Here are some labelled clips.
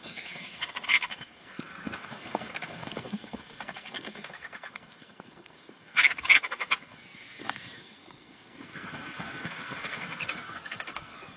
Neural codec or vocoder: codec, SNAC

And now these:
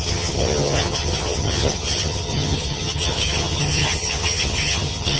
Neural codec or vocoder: vocoder, HiFi-GAN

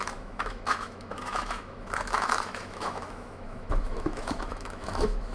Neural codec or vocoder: autoencoder, DAC-VAE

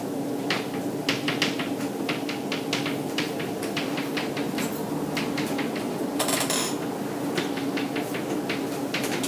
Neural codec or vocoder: none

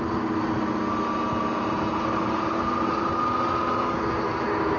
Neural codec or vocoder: none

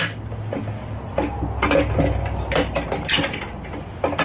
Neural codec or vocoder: none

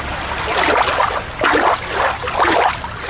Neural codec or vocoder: none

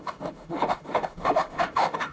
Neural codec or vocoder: autoencoder, DAC-VAE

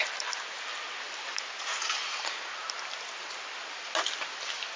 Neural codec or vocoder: none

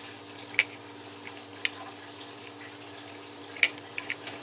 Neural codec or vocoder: none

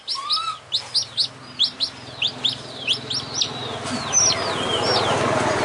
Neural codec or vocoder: none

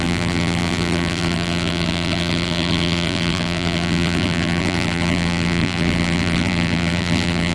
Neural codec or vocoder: vocoder, BigVGAN v2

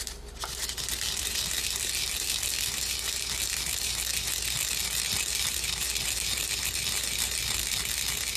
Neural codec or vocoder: none